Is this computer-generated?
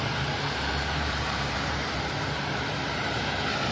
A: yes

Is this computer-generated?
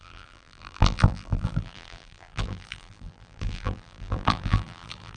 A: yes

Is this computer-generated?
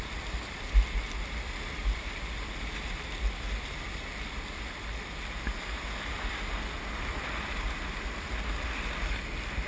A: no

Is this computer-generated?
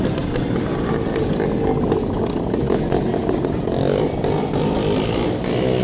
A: no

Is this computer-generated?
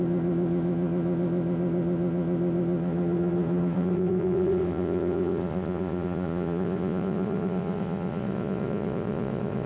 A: yes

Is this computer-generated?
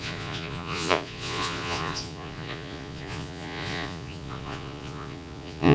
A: yes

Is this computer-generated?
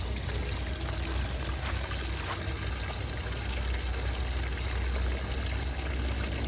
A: no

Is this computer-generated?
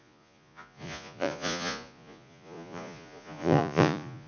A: yes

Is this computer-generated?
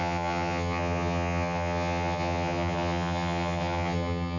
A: yes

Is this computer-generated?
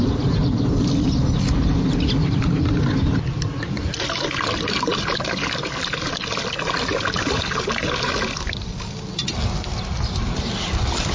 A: no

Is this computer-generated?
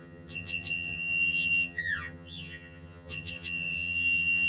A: yes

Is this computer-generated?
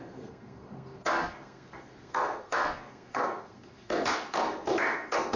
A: yes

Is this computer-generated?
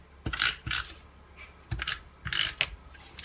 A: no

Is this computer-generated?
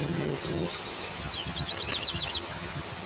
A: yes